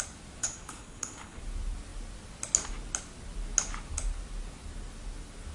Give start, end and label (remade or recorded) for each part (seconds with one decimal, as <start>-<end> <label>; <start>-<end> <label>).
0.0-0.4 recorded; 0.4-1.4 remade; 1.4-5.5 recorded

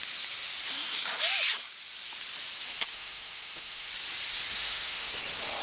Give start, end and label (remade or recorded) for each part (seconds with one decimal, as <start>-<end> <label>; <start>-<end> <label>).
0.0-2.9 recorded; 2.9-3.9 remade; 3.9-4.5 recorded; 4.5-5.1 remade; 5.1-5.6 recorded

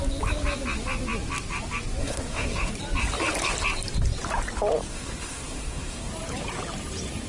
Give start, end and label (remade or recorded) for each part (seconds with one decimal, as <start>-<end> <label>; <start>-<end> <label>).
0.0-2.0 recorded; 2.0-2.7 remade; 2.7-4.9 recorded; 4.9-6.1 remade; 6.1-7.3 recorded

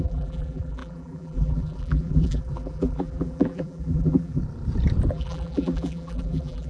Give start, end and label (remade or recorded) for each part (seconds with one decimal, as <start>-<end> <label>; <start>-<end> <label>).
0.0-4.4 remade; 4.4-5.1 recorded; 5.1-6.7 remade

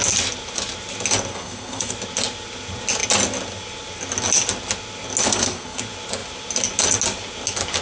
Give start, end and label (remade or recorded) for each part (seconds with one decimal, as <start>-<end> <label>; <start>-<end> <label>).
0.0-1.3 recorded; 1.3-1.9 remade; 1.9-5.2 recorded; 5.2-5.8 remade; 5.8-7.8 recorded

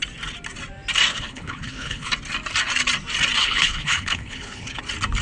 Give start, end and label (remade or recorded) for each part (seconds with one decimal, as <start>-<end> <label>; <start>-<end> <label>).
0.0-1.1 recorded; 1.1-2.1 remade; 2.1-3.4 recorded; 3.4-4.8 remade; 4.8-5.2 recorded

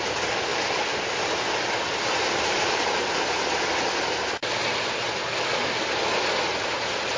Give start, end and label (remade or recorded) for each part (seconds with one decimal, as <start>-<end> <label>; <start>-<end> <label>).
0.0-7.2 recorded